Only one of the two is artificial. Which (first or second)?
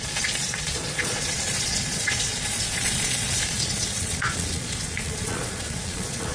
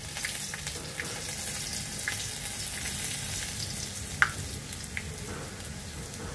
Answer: first